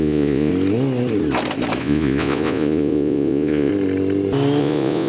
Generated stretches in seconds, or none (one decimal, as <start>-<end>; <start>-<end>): 0.0-0.5; 1.8-3.7; 4.6-5.1